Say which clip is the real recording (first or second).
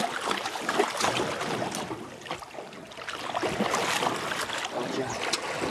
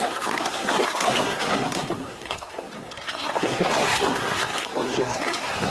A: first